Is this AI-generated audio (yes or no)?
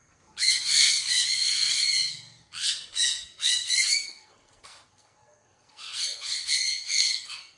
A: yes